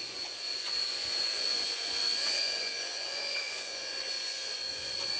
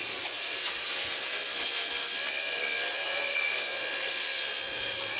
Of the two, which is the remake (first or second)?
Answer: first